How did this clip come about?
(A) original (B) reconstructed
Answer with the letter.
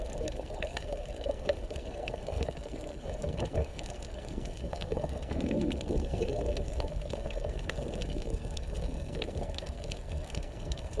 B